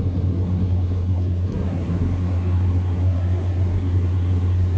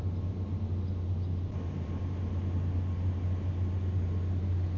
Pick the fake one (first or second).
first